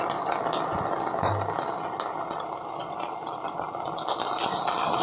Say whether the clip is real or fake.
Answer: real